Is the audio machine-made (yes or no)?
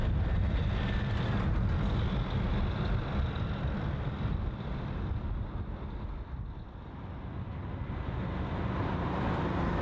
no